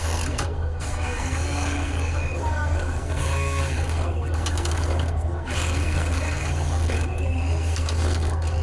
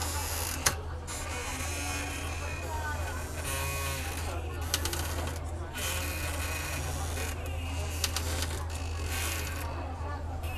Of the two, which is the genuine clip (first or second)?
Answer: second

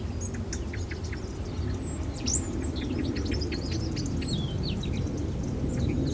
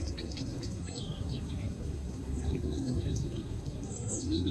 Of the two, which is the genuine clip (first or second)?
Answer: first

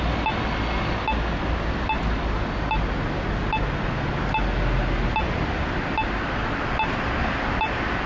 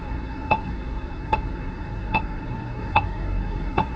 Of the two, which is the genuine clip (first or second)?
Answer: first